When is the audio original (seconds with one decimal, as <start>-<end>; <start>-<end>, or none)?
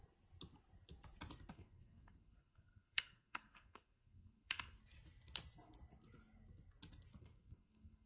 0.0-1.5; 4.8-7.2